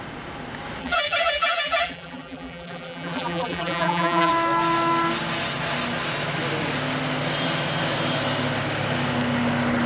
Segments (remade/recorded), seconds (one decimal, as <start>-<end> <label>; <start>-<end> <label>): 0.0-0.8 recorded; 0.8-4.3 remade; 4.3-9.9 recorded